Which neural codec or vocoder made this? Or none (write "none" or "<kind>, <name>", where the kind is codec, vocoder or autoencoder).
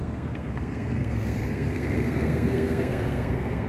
codec, SNAC